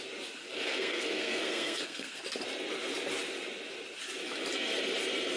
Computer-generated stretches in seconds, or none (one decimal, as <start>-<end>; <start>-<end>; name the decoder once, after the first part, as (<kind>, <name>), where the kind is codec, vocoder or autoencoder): 0.4-2.2 (codec, SNAC)